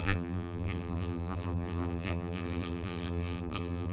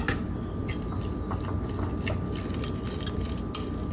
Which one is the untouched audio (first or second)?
second